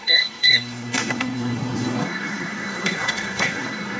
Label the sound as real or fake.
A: fake